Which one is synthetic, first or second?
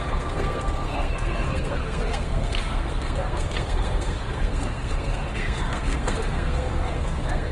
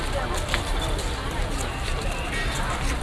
first